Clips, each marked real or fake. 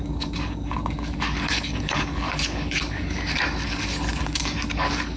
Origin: fake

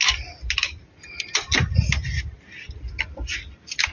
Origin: real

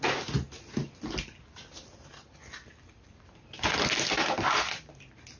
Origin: real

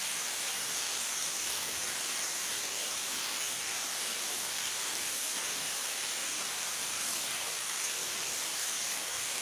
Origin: fake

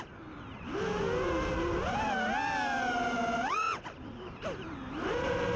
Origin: real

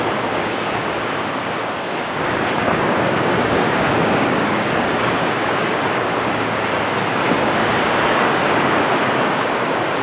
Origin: fake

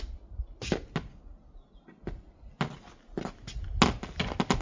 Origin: real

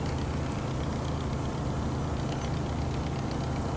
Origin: real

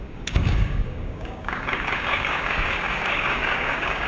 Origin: fake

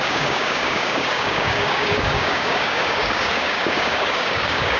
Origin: fake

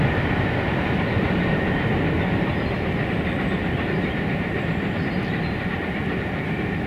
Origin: real